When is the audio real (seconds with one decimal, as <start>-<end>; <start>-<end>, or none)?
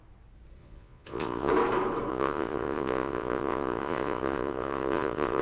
0.0-0.6; 1.5-2.1